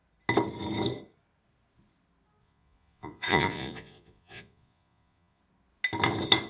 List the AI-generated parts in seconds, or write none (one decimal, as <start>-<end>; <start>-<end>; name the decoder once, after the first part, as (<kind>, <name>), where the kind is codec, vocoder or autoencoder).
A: 2.4-5.4 (vocoder, Vocos)

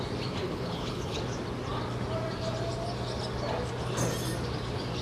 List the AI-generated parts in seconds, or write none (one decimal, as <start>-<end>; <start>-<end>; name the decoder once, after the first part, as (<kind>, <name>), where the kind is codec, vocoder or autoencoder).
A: 0.4-1.2 (codec, HILCodec)

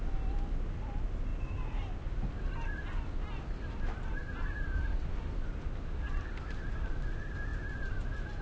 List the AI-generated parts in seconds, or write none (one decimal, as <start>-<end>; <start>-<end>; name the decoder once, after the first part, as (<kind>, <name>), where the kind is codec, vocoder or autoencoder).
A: none

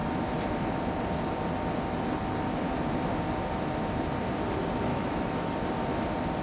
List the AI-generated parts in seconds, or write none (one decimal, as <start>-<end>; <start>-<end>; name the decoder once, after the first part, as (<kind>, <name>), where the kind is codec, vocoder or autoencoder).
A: 4.9-5.5 (autoencoder, DAC-VAE)

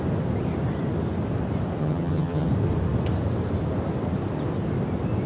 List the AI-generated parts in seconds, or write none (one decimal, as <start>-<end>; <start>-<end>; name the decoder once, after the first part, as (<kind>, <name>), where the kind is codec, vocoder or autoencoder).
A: 1.8-2.5 (vocoder, HiFi-GAN)

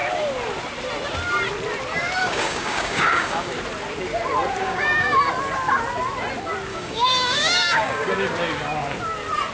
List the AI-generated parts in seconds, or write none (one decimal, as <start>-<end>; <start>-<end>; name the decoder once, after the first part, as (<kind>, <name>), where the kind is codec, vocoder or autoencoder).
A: 2.2-3.5 (codec, DAC); 4.6-5.2; 6.7-8.1

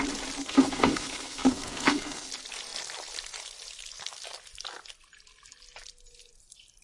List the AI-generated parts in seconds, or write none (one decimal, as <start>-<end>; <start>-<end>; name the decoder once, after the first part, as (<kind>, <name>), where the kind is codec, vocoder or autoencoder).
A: 0.4-2.3 (codec, SNAC)

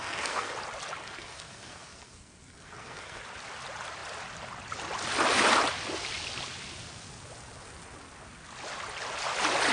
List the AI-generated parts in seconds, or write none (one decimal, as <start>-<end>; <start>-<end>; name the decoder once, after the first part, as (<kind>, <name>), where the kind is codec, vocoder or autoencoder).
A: 0.0-0.5 (codec, SNAC); 1.0-3.2